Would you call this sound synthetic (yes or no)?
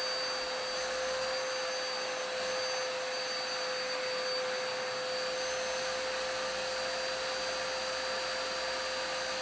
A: no